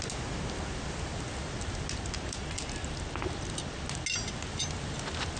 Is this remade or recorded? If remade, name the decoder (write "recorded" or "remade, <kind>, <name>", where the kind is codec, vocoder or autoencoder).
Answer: recorded